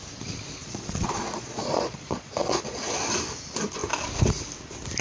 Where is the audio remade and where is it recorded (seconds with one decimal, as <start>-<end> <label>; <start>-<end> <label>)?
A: 0.0-0.6 recorded; 0.6-2.8 remade; 2.8-5.0 recorded